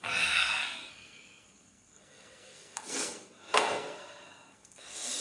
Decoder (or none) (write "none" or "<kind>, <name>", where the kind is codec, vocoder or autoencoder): codec, SNAC